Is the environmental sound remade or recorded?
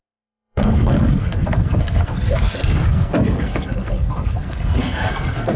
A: remade